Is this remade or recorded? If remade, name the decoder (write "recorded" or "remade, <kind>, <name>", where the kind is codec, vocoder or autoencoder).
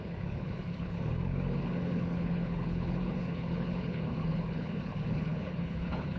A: remade, codec, HILCodec